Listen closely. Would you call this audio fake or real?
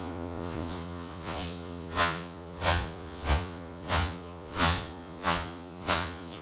fake